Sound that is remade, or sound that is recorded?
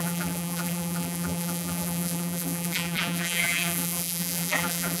remade